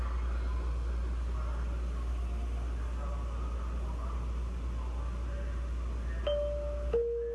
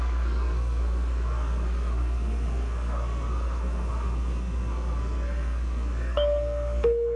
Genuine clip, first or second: first